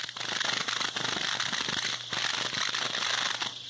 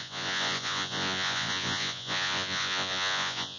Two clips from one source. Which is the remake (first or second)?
second